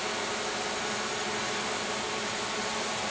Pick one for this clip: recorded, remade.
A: recorded